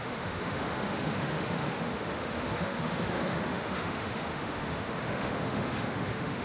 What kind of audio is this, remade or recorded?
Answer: remade